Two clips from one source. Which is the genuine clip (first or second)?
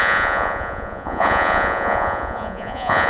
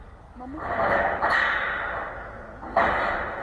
second